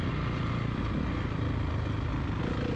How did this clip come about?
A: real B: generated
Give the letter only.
A